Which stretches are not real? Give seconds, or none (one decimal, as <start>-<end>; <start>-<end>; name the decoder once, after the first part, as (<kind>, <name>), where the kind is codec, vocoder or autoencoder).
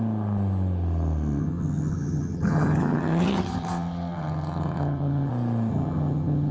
1.4-5.3 (vocoder, HiFi-GAN); 5.7-6.5